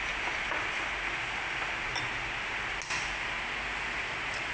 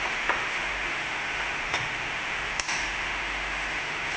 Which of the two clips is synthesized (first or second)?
second